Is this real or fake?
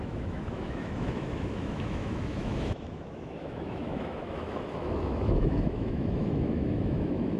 fake